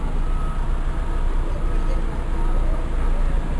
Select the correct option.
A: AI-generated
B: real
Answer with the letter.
B